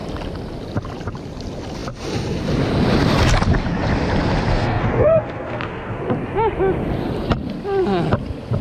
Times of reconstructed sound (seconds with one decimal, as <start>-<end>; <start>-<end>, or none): 4.5-6.0